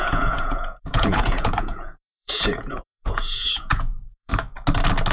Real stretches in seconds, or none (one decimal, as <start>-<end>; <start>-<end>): 4.3-5.1